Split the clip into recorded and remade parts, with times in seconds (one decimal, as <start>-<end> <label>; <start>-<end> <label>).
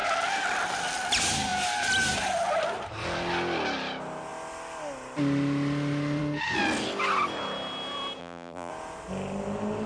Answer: 0.0-8.2 recorded; 8.2-8.7 remade; 8.7-9.9 recorded